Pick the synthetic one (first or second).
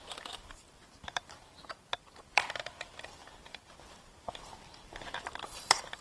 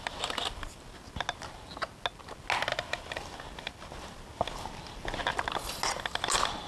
first